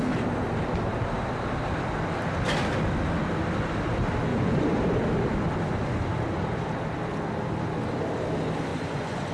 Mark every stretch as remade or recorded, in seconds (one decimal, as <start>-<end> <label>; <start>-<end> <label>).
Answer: 0.0-4.3 recorded; 4.3-4.8 remade; 4.8-8.7 recorded; 8.7-9.3 remade